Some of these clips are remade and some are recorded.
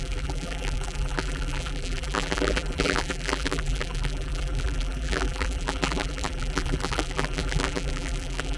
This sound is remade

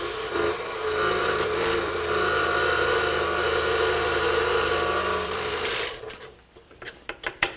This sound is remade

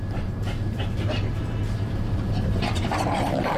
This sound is remade